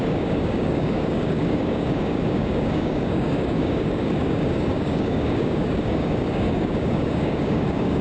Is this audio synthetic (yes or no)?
yes